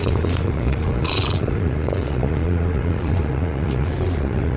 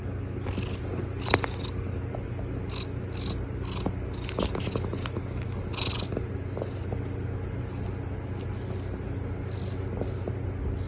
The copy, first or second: first